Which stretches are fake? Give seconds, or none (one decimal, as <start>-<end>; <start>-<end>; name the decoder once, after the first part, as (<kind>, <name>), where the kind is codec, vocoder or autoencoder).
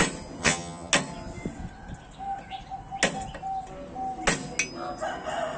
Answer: 0.4-0.9 (vocoder, HiFi-GAN)